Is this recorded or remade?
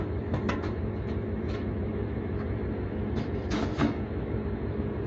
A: remade